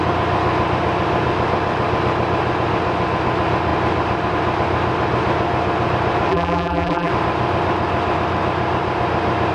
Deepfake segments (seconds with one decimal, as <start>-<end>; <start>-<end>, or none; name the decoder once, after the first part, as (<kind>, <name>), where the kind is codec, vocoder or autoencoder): 6.3-7.1 (vocoder, BigVGAN v2)